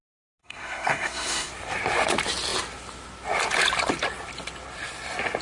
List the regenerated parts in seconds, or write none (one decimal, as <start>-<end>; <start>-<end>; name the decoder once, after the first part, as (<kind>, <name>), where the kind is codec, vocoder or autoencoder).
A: 0.4-1.5 (codec, SNAC)